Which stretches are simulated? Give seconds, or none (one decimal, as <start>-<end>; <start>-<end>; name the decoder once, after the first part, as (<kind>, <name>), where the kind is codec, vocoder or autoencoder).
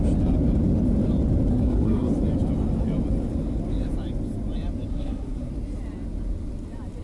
1.5-2.1 (codec, SNAC); 4.9-5.5